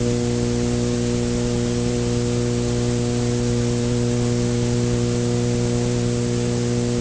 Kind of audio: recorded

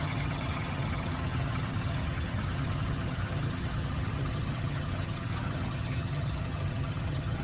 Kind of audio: remade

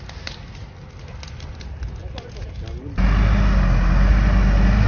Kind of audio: recorded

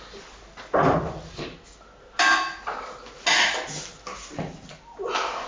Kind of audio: recorded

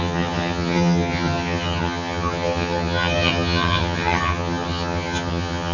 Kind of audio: remade